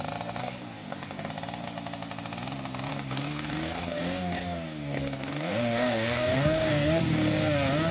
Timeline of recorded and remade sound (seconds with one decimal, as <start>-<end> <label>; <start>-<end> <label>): 0.0-0.4 recorded; 0.4-1.3 remade; 1.3-2.9 recorded; 2.9-7.0 remade; 7.0-7.9 recorded